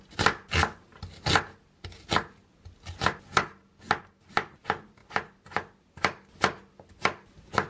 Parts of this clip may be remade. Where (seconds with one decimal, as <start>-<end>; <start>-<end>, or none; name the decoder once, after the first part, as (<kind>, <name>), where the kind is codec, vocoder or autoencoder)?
none